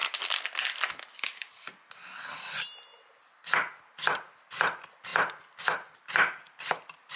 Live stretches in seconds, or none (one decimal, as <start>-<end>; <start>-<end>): 0.0-1.1; 2.9-3.9; 5.1-6.0